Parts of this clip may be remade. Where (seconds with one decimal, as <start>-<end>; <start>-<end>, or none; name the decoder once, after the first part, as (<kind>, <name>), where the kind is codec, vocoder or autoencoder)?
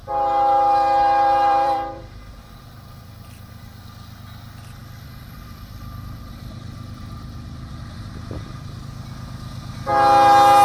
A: 0.0-3.8 (vocoder, BigVGAN v2); 4.8-8.9